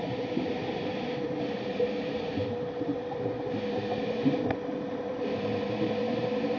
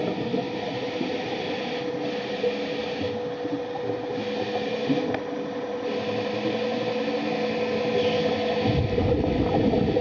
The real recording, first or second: second